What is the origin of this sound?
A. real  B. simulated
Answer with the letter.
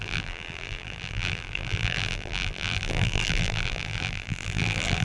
B